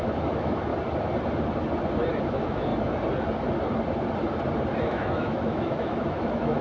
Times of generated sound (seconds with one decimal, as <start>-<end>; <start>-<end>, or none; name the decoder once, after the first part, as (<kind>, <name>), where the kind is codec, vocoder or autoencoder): 0.0-0.7 (autoencoder, DAC-VAE); 2.2-2.7; 4.8-6.6